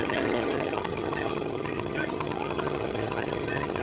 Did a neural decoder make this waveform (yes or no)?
yes